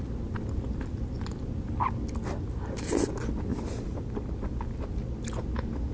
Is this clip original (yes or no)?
yes